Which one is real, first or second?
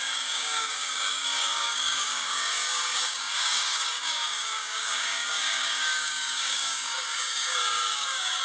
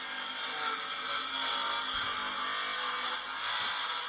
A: second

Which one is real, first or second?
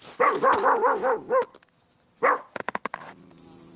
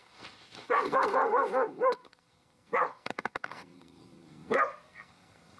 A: first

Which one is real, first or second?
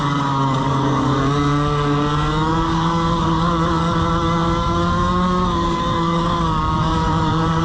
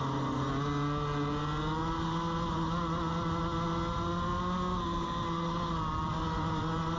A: second